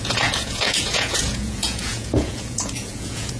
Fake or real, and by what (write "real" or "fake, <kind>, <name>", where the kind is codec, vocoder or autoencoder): fake, vocoder, Vocos